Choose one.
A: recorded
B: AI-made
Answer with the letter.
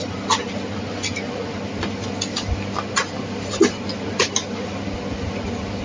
A